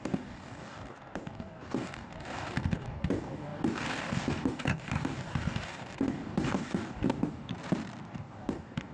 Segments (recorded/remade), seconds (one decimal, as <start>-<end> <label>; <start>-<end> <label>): 0.0-7.5 remade; 7.5-8.1 recorded; 8.1-8.9 remade